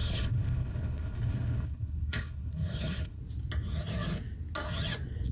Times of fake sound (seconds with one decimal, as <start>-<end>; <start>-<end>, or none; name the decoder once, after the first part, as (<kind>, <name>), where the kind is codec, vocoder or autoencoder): 0.0-3.2 (codec, HILCodec)

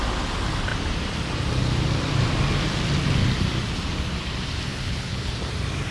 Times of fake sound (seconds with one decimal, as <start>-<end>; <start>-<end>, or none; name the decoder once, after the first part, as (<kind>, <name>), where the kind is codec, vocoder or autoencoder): 4.7-5.3 (codec, HILCodec)

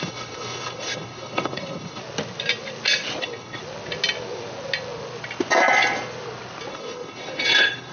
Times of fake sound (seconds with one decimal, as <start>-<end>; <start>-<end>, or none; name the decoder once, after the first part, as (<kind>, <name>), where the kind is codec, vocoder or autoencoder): 0.0-2.0 (codec, HILCodec); 3.2-3.6; 6.7-7.9

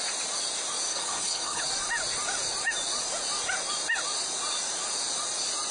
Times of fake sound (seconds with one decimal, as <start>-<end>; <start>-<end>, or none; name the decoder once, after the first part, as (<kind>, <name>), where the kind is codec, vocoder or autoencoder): 0.9-1.6 (codec, HILCodec)

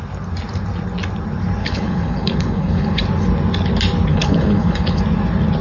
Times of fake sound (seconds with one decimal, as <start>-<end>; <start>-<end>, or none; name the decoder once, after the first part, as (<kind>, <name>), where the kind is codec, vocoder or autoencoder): 1.6-3.0 (codec, HILCodec); 4.1-5.0

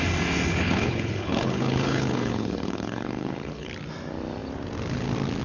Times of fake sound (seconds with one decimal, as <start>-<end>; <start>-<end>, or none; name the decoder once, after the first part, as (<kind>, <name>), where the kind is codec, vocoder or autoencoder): 0.5-3.7 (codec, HILCodec)

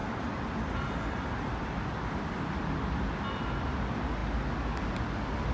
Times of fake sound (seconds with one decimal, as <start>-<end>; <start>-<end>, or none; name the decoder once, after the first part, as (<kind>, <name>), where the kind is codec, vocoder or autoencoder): none